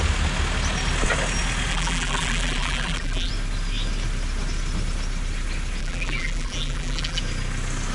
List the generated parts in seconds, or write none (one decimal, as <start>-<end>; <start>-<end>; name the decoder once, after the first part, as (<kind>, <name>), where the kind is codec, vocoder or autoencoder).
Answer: 1.7-3.3 (vocoder, BigVGAN v2); 5.8-7.2